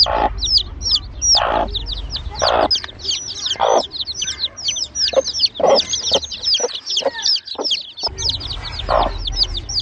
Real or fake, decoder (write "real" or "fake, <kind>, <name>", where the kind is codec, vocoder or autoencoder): real